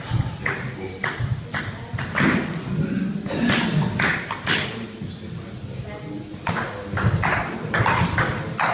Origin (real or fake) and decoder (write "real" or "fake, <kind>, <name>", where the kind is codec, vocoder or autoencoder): real